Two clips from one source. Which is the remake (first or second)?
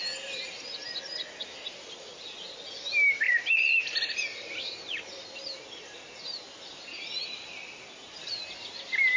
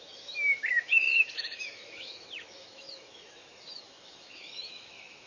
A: second